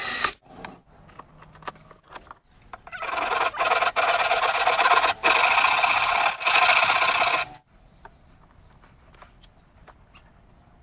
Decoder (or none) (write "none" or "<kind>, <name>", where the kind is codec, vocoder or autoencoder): none